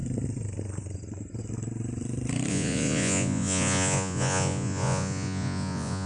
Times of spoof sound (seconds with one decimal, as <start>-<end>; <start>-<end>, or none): 2.5-6.1